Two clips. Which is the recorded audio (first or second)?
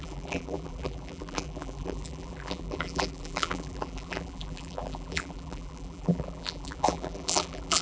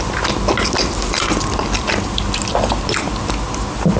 second